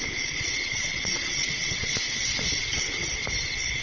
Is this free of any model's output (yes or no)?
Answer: no